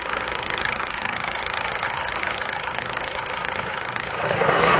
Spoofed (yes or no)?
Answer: yes